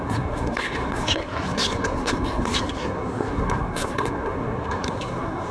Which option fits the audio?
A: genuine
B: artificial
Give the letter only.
B